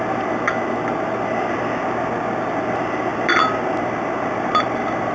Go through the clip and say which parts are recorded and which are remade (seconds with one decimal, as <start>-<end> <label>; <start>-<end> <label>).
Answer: 0.0-3.1 recorded; 3.1-5.1 remade